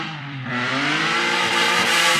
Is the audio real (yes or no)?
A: no